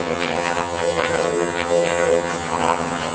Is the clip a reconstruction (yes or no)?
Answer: yes